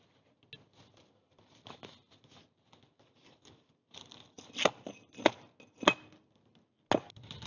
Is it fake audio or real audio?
real